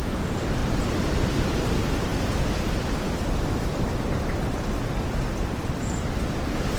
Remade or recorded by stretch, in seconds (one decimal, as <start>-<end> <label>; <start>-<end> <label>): 0.0-6.8 remade